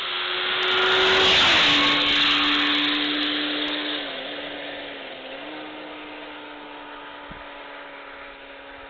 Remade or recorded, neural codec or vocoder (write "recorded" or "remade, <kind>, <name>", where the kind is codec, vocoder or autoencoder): recorded